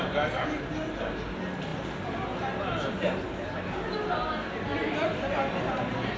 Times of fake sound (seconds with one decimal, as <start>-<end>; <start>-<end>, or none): none